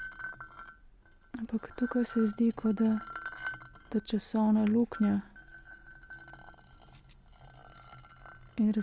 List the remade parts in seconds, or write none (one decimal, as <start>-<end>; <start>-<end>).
none